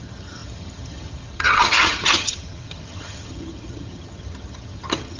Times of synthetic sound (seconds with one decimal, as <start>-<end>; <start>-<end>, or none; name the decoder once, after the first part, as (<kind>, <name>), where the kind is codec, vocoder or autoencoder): 0.0-5.2 (vocoder, HiFi-GAN)